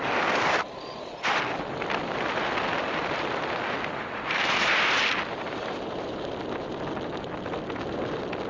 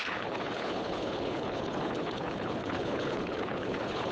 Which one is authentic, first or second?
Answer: first